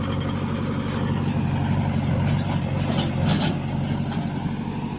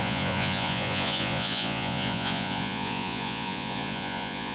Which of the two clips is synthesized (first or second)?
second